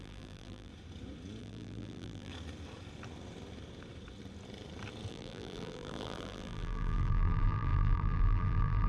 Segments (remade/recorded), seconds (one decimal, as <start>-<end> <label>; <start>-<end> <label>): 0.0-0.7 remade; 0.7-1.4 recorded; 1.4-2.3 remade; 2.3-5.1 recorded; 5.1-8.9 remade